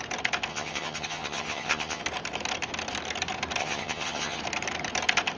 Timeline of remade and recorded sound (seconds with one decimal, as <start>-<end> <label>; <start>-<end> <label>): 0.0-0.5 recorded; 0.5-2.0 remade; 2.0-3.6 recorded; 3.6-4.4 remade; 4.4-5.4 recorded